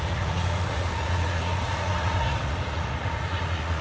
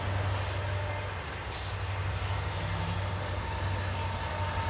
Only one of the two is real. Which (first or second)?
second